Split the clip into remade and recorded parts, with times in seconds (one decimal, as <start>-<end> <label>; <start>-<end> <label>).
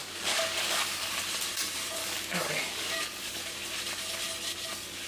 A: 0.0-1.1 remade; 1.1-2.0 recorded; 2.0-3.4 remade; 3.4-5.1 recorded